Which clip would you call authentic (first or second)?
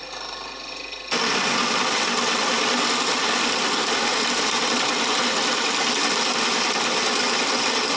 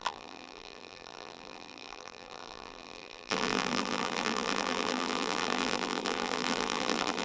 first